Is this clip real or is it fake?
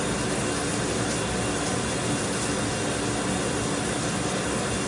real